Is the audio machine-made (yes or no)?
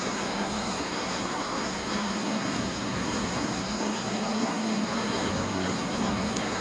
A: yes